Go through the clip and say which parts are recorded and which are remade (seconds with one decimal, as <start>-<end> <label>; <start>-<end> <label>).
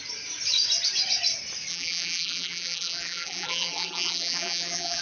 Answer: 0.0-1.7 recorded; 1.7-5.0 remade